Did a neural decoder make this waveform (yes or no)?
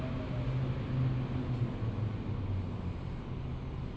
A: no